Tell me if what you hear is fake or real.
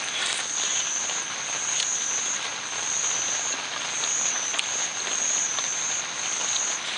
real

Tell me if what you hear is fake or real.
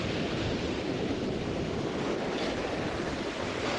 real